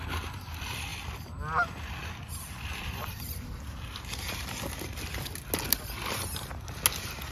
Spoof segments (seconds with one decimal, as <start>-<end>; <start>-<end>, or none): none